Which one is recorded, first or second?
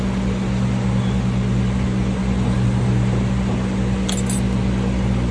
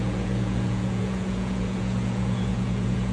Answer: first